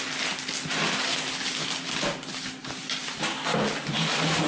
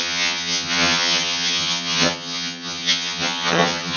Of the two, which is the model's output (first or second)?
second